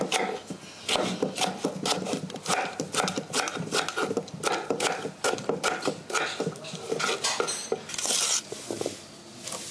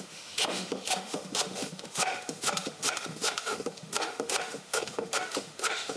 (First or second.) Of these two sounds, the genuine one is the first